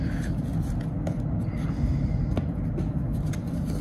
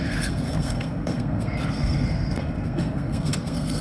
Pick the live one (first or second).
first